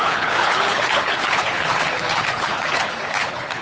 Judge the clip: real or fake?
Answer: fake